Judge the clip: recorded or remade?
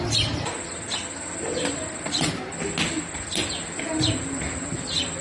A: recorded